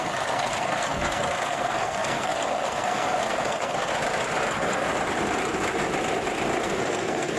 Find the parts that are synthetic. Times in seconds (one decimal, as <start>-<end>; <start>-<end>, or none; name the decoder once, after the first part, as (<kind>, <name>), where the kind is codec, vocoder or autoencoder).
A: 0.0-3.9 (codec, SNAC); 4.5-4.9; 6.6-7.4